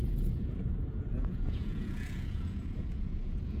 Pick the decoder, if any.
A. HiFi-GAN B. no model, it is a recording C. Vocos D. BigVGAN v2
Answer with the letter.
C